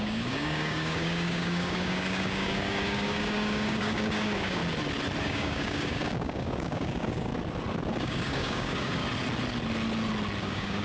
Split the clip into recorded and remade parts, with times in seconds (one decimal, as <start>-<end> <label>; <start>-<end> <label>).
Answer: 0.0-4.6 remade; 4.6-5.2 recorded; 5.2-7.3 remade; 7.3-7.9 recorded; 7.9-9.0 remade; 9.0-10.4 recorded; 10.4-10.8 remade